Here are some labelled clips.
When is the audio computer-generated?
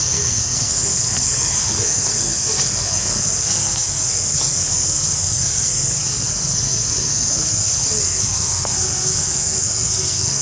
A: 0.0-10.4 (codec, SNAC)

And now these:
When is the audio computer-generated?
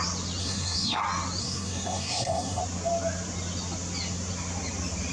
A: 0.4-1.0 (codec, SNAC); 1.4-2.6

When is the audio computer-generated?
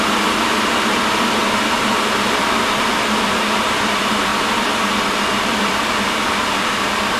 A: 0.0-1.4 (vocoder, BigVGAN v2); 2.3-4.3; 5.1-7.2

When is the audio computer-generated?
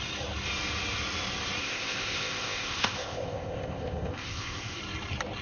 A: 1.6-4.8 (codec, ZipCodec)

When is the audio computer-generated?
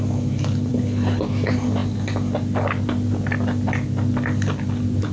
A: 0.7-1.2 (codec, HILCodec)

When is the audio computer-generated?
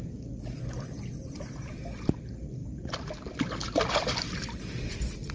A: none